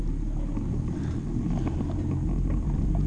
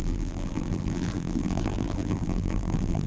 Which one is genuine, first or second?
first